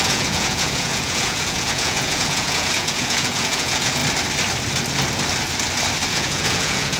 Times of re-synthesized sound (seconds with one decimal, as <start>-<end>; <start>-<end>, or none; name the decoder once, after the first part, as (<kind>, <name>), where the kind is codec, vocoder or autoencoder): 0.0-4.0 (vocoder, Vocos); 6.1-7.0